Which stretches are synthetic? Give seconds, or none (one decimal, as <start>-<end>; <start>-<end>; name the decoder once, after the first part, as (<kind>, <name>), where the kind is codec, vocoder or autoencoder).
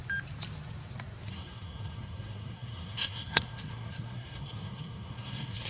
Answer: 1.3-5.7 (codec, SNAC)